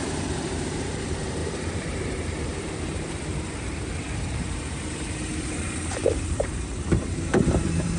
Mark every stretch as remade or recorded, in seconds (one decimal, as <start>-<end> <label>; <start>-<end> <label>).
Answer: 0.0-8.0 remade